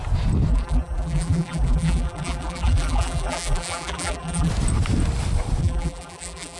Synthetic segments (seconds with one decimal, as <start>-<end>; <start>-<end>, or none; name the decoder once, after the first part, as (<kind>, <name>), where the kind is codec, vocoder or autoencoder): 0.5-4.5 (vocoder, BigVGAN v2); 5.6-6.6